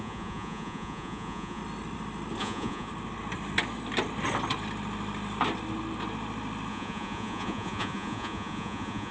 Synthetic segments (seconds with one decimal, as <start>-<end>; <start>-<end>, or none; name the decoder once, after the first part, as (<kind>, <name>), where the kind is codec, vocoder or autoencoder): 0.0-1.6 (vocoder, Vocos); 2.4-2.9; 6.7-9.1